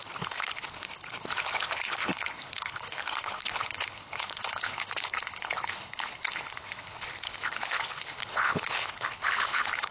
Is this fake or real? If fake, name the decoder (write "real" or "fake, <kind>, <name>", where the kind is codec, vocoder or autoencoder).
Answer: fake, codec, HILCodec